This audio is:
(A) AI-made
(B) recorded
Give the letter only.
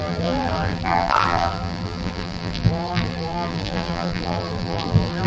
A